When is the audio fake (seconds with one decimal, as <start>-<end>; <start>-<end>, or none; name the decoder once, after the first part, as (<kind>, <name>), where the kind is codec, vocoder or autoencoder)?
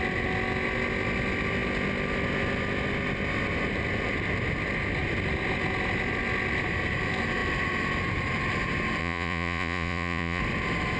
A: 9.0-10.4 (vocoder, Vocos)